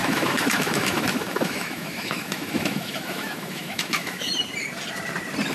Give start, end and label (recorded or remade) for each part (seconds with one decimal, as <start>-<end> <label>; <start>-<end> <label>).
0.0-4.3 remade; 4.3-5.5 recorded